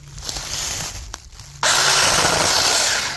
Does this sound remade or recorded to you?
recorded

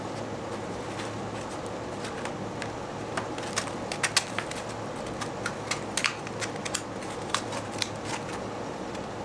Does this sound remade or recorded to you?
recorded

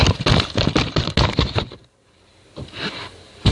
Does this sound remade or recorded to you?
recorded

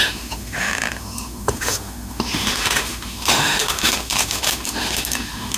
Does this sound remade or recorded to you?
remade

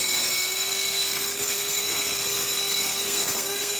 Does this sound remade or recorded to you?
remade